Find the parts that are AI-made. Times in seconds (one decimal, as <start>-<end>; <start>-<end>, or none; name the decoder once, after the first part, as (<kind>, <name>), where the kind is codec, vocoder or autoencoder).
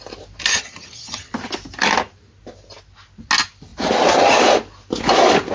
0.5-1.3 (vocoder, HiFi-GAN)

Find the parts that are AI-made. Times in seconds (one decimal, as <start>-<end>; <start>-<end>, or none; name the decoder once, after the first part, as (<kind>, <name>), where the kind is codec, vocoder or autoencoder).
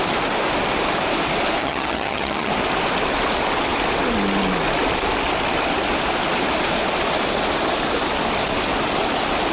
1.6-2.5 (vocoder, HiFi-GAN)